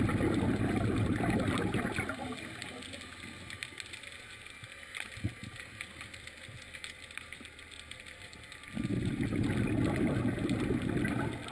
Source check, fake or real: real